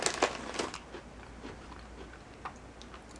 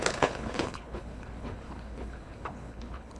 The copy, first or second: second